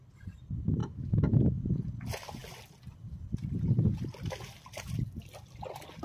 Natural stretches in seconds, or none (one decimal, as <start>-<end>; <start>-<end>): 0.0-0.8; 1.6-6.0